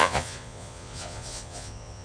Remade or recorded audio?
remade